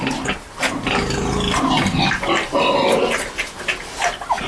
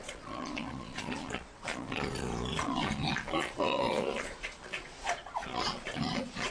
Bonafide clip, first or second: first